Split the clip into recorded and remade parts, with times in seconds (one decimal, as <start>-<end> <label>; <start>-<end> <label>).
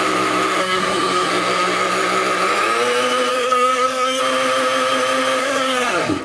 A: 0.0-0.6 recorded; 0.6-1.3 remade; 1.3-3.3 recorded; 3.3-4.2 remade; 4.2-5.4 recorded; 5.4-6.2 remade